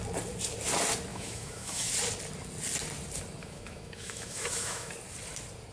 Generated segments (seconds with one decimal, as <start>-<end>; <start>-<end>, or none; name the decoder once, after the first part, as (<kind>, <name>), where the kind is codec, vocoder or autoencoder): 1.1-1.9 (autoencoder, DAC-VAE); 3.4-4.9